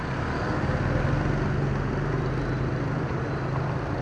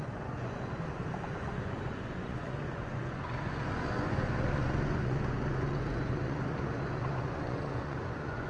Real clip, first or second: first